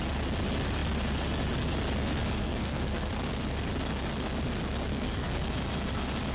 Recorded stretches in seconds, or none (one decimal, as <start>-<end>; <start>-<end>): 0.0-2.4; 3.1-4.9; 5.5-6.3